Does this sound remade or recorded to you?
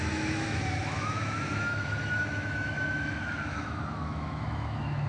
remade